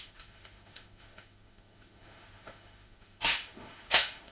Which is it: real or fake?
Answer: fake